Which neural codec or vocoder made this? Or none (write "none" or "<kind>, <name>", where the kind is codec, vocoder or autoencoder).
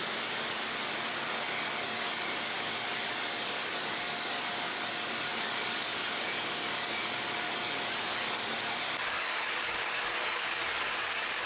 codec, DAC